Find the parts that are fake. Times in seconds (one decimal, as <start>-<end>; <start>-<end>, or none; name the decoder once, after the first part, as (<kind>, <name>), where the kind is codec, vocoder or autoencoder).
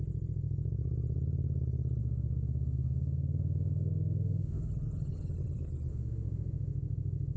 2.0-4.7 (autoencoder, DAC-VAE); 5.9-7.4